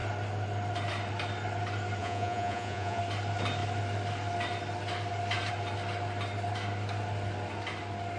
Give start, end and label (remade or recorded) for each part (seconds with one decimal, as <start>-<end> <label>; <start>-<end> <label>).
0.0-2.0 recorded; 2.0-3.0 remade; 3.0-8.2 recorded